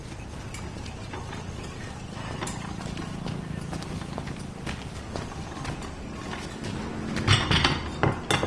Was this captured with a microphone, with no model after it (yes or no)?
yes